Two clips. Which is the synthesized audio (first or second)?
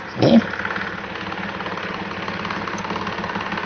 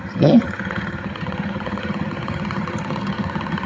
second